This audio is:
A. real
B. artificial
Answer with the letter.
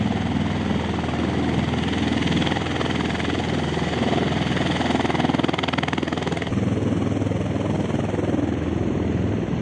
A